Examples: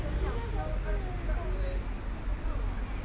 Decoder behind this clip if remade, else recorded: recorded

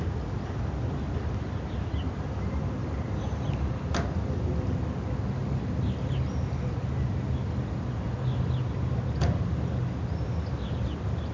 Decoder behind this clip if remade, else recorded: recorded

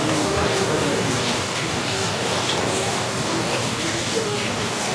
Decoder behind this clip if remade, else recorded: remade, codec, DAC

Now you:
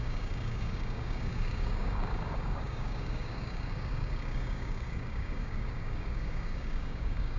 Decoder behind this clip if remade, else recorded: remade, codec, DAC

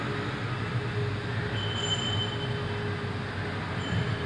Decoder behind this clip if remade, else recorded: recorded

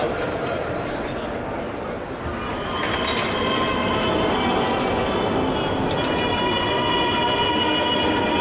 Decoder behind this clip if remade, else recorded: recorded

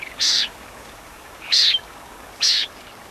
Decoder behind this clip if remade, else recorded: remade, codec, DAC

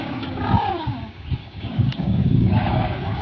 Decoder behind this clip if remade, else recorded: remade, codec, DAC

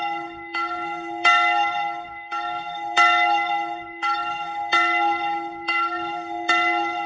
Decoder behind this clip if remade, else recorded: remade, codec, DAC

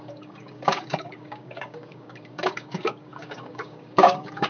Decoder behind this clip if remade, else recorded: remade, codec, DAC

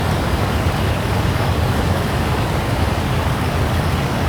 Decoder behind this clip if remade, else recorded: remade, codec, DAC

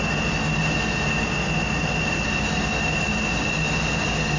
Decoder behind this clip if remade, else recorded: recorded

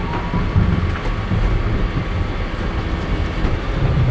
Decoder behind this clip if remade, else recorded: recorded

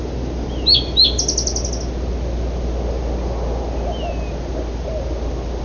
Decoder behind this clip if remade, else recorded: recorded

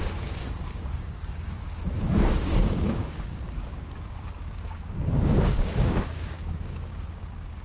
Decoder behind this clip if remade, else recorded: remade, codec, DAC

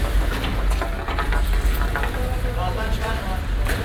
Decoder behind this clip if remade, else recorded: recorded